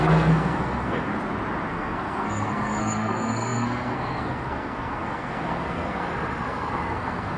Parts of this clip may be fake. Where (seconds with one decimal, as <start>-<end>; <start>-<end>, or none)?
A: 0.0-1.1; 1.7-7.4